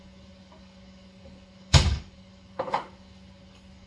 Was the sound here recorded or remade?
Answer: remade